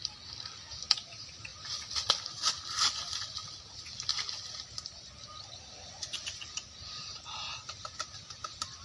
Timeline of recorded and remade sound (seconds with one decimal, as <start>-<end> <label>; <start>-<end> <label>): 0.0-8.8 recorded